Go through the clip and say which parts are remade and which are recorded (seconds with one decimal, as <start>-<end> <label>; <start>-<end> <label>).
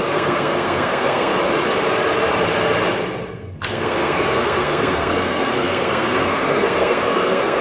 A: 0.0-1.3 remade; 1.3-3.3 recorded; 3.3-7.6 remade